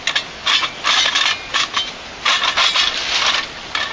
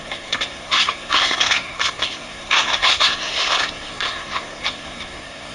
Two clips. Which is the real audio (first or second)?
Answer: first